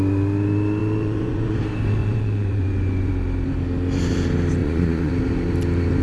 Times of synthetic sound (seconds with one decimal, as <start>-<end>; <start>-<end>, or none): 0.8-1.6; 2.0-3.1; 4.6-5.1